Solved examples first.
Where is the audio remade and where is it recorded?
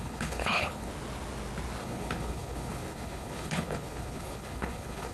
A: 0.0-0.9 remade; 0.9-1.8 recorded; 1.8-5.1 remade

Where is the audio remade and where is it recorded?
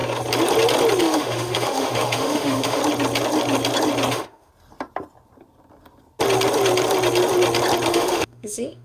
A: 0.0-1.0 recorded; 1.0-2.8 remade; 2.8-4.1 recorded; 4.1-4.5 remade; 4.5-7.9 recorded; 7.9-8.8 remade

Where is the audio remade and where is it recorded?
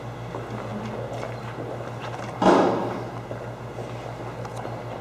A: 0.0-5.0 recorded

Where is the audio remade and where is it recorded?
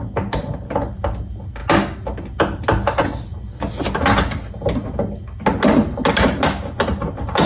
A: 0.0-7.5 recorded